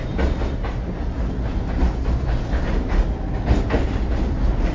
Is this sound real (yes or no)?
yes